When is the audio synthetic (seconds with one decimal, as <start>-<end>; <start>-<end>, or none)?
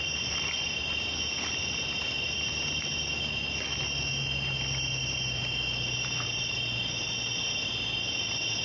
none